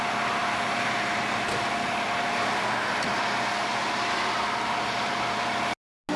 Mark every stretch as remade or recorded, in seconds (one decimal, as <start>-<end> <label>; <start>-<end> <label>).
0.0-6.2 recorded